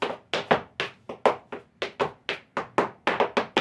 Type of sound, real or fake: real